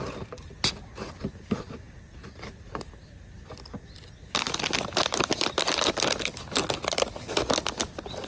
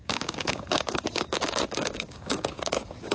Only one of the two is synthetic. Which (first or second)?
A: second